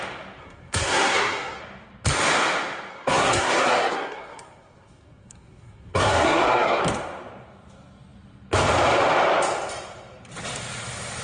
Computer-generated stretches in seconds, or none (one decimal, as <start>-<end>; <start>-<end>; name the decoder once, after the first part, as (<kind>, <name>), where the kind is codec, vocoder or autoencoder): 0.4-1.6 (codec, SNAC); 2.9-6.8